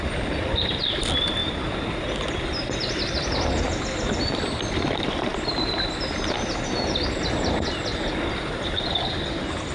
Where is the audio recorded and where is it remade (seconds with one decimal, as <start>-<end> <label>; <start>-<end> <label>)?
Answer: 0.0-9.7 recorded